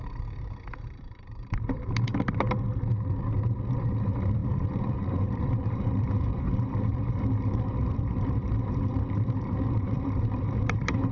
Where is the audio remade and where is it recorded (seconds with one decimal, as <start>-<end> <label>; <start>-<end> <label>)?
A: 0.0-2.1 remade; 2.1-3.8 recorded; 3.8-11.1 remade